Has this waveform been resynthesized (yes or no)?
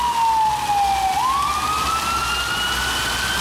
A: no